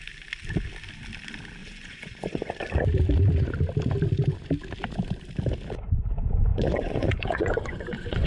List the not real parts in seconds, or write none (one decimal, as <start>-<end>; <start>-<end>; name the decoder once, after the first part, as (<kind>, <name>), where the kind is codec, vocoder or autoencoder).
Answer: 1.6-2.5 (vocoder, Vocos); 6.5-8.3